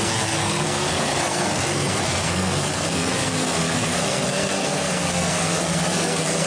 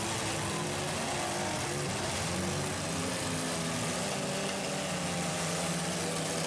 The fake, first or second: first